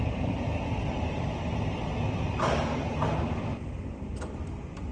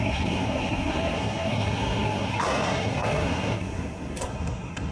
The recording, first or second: first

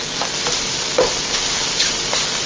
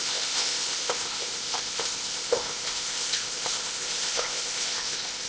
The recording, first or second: first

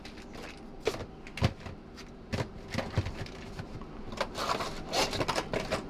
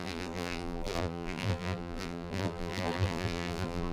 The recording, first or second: first